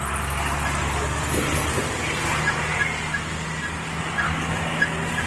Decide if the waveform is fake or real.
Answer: real